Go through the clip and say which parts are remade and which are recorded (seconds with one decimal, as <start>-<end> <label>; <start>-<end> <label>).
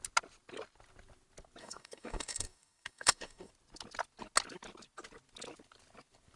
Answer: 0.0-1.6 recorded; 1.6-3.5 remade; 3.5-6.4 recorded